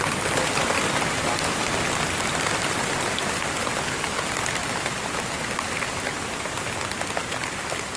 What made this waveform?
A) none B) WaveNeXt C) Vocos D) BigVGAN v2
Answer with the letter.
D